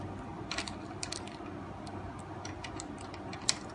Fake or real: real